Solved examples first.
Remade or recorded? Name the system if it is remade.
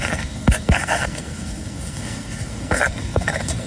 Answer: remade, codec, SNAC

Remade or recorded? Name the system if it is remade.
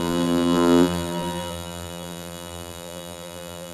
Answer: remade, vocoder, BigVGAN v2